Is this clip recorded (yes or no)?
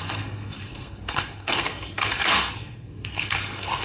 no